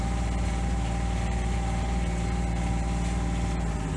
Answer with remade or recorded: recorded